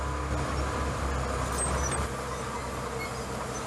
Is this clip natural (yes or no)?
yes